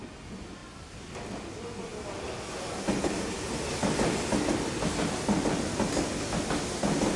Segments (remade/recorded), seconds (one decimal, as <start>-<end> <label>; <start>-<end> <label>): 0.0-7.2 recorded